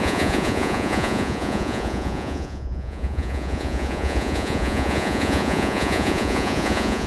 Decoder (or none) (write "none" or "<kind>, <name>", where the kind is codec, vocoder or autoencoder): vocoder, Vocos